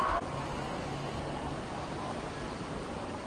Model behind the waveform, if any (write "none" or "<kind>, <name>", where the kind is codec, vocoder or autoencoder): none